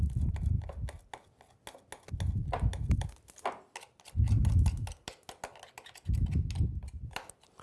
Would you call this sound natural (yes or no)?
yes